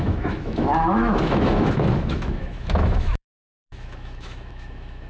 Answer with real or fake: fake